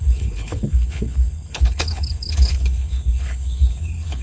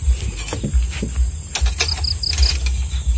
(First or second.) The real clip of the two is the second